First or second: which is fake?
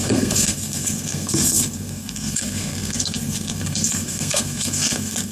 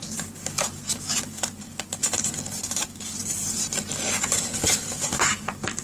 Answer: first